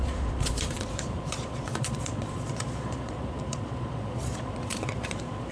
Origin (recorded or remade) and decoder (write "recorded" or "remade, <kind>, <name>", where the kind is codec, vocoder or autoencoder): remade, vocoder, Vocos